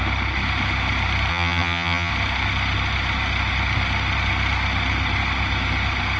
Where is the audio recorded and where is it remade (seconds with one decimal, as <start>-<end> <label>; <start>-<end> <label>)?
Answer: 0.0-1.3 recorded; 1.3-2.1 remade; 2.1-6.2 recorded